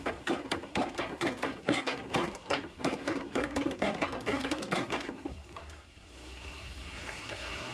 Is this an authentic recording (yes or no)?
no